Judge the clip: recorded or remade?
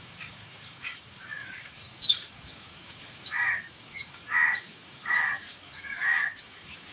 remade